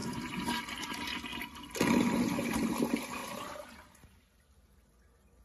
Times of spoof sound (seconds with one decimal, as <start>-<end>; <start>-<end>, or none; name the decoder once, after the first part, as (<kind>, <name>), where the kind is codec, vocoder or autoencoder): 0.0-0.6 (vocoder, BigVGAN v2); 3.2-4.5